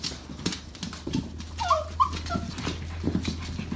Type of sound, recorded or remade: recorded